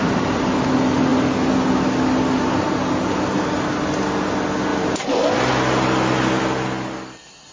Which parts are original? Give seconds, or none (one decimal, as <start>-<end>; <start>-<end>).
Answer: 0.0-7.5